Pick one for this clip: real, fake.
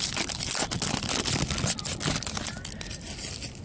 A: real